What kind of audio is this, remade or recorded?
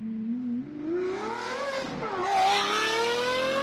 recorded